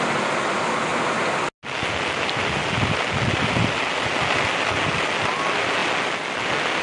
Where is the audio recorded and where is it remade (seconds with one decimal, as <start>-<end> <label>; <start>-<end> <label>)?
0.0-6.8 recorded